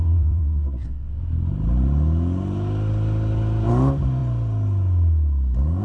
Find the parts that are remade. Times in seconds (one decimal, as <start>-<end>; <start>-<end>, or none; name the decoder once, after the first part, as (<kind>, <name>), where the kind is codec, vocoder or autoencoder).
0.0-1.2 (vocoder, WaveNeXt)